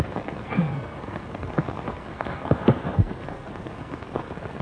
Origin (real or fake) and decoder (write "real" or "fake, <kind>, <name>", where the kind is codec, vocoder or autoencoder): fake, codec, SNAC